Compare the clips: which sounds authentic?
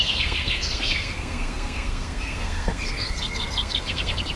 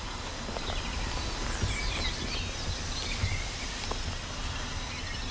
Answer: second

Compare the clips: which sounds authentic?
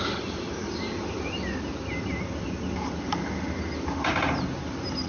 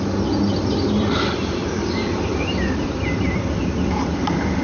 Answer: first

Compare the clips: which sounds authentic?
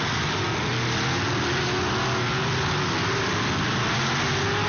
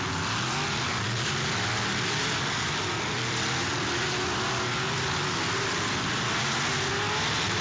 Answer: first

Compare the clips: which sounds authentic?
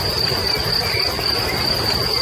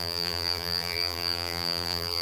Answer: first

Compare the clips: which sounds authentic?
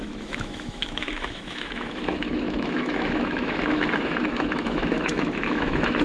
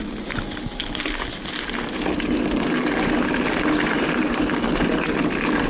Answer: second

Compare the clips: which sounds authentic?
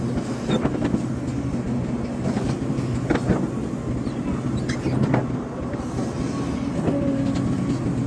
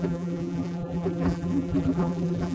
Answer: first